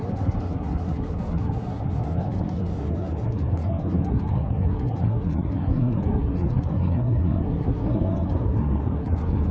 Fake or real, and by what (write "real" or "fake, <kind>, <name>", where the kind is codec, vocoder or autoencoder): fake, codec, SNAC